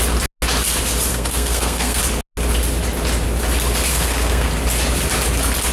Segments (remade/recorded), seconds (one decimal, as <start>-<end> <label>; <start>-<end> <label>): 0.0-1.1 recorded; 1.1-2.0 remade; 2.0-3.9 recorded; 3.9-4.5 remade; 4.5-5.7 recorded